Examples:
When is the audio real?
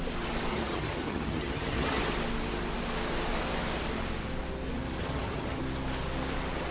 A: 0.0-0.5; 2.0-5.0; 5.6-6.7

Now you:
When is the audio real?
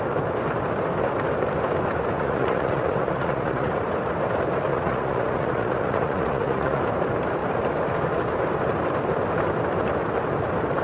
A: 0.0-2.2; 3.8-4.7; 6.8-10.8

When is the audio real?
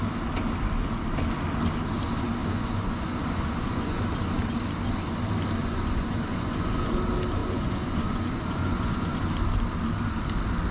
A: 0.0-2.4; 4.0-5.6; 7.0-7.4; 9.2-10.7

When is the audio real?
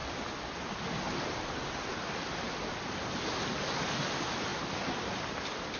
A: 0.0-5.8